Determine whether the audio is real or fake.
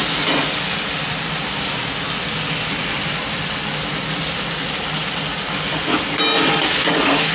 real